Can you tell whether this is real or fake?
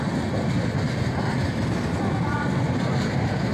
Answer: real